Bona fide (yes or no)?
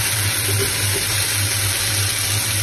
yes